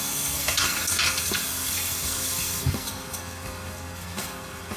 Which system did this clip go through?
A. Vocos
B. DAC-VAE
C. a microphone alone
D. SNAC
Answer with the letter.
D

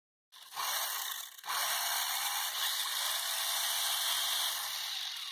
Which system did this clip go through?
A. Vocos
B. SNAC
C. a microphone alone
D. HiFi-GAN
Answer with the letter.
C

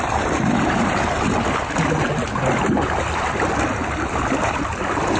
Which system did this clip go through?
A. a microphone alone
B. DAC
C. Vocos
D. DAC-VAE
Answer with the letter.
A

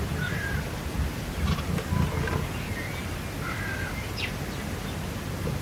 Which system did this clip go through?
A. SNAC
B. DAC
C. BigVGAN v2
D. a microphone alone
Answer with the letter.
D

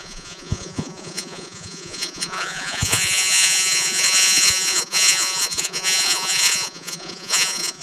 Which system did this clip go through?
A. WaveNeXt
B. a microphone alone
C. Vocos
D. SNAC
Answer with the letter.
C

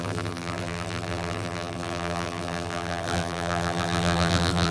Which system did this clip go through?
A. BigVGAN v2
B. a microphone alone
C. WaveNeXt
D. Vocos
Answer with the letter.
A